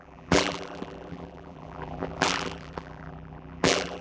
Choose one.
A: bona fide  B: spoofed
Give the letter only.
B